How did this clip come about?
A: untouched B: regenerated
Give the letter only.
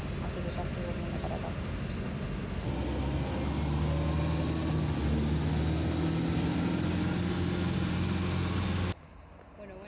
A